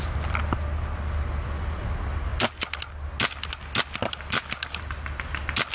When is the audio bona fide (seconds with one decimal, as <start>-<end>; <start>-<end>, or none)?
0.0-5.7